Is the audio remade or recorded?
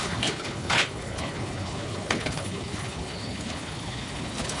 remade